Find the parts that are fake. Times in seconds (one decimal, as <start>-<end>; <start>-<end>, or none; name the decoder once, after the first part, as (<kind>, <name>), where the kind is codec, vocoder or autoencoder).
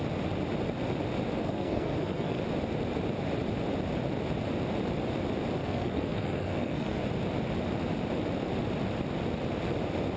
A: 1.4-2.4 (codec, SNAC); 5.6-7.0